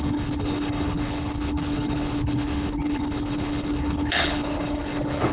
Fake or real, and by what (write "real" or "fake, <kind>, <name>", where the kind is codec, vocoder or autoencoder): fake, codec, HILCodec